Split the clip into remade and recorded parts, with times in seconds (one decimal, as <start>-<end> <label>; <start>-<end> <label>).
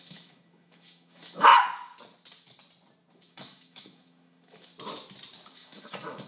0.0-1.5 remade; 1.5-3.1 recorded; 3.1-4.7 remade; 4.7-5.5 recorded; 5.5-6.3 remade